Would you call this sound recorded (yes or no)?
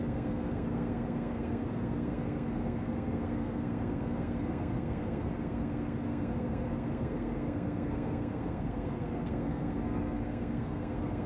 no